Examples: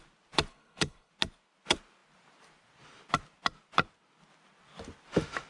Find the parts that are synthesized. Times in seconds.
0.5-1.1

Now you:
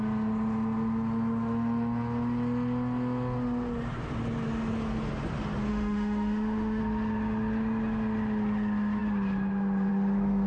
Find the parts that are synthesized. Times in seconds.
5.7-6.8

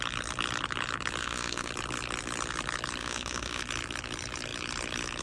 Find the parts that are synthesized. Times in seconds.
1.2-1.7; 3.0-3.6